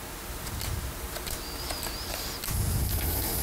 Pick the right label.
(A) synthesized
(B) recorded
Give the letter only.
B